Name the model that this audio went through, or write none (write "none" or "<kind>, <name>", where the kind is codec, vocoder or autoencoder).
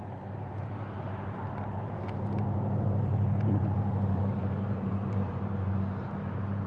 vocoder, BigVGAN v2